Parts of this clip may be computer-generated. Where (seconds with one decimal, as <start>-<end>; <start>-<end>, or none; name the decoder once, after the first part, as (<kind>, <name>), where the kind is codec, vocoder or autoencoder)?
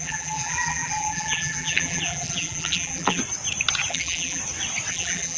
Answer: 0.0-3.2 (vocoder, BigVGAN v2); 3.9-4.4; 4.9-5.4